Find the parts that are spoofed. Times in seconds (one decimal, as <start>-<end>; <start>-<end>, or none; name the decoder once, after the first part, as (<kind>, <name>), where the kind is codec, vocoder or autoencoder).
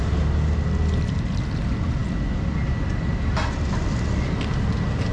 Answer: none